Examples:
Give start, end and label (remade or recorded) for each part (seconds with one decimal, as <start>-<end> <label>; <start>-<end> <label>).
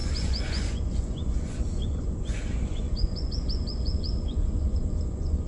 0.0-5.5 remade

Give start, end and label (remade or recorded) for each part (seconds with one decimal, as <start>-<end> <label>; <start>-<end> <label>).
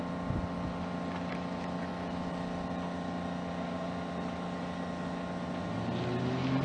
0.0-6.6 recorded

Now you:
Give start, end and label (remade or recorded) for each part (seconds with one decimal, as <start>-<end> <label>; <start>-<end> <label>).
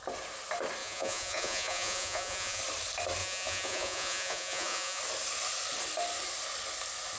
0.0-0.8 recorded; 0.8-2.6 remade; 2.6-3.2 recorded; 3.2-5.0 remade; 5.0-7.2 recorded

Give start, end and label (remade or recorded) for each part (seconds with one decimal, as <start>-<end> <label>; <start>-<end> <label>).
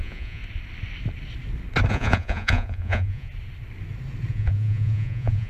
0.0-0.4 remade; 0.4-1.9 recorded; 1.9-3.3 remade; 3.3-4.3 recorded; 4.3-5.5 remade